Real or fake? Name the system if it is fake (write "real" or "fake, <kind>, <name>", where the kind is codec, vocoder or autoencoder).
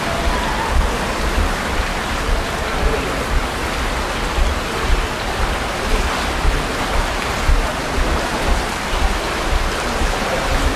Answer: real